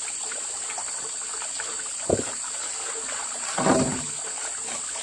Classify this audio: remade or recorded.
recorded